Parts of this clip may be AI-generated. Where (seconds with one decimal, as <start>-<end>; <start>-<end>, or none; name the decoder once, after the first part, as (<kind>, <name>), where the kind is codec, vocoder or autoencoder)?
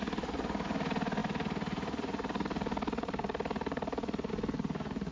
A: none